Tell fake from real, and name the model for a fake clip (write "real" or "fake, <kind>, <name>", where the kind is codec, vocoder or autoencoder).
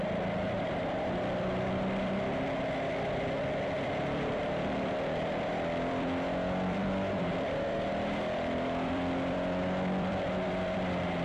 fake, vocoder, BigVGAN v2